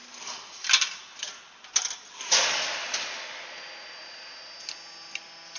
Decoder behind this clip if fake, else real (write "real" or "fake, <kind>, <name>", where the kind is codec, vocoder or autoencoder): real